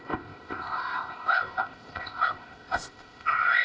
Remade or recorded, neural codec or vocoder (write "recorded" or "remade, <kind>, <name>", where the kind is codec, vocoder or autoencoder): remade, codec, ZipCodec